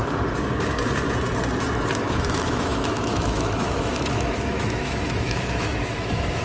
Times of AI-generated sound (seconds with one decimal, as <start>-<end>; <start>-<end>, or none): 2.0-6.4